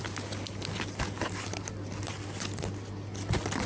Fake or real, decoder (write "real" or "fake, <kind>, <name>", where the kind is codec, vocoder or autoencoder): real